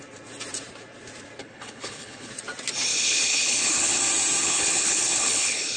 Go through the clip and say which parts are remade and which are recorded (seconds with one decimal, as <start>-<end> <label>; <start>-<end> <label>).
0.0-1.4 recorded; 1.4-2.3 remade; 2.3-2.9 recorded; 2.9-4.0 remade; 4.0-4.4 recorded; 4.4-5.8 remade